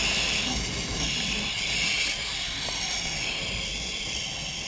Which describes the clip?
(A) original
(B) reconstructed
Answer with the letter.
A